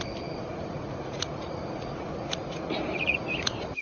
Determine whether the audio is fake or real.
fake